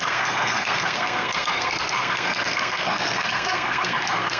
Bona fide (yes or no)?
no